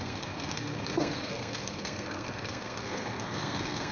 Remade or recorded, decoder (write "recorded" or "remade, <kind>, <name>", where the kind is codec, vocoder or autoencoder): remade, codec, SNAC